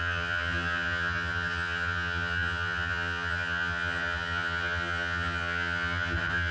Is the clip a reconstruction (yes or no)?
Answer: yes